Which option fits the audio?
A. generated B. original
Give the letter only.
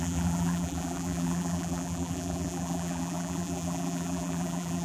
A